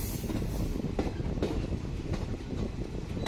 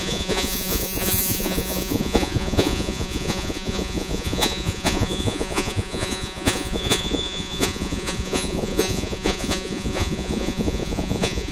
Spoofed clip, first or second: second